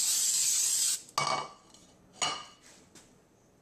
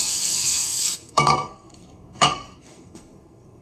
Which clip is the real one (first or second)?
first